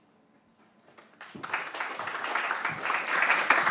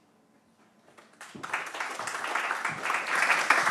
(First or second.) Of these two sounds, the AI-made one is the first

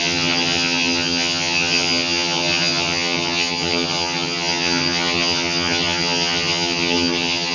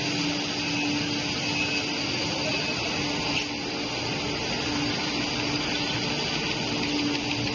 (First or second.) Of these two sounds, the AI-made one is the first